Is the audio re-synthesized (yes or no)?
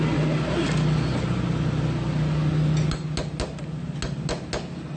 no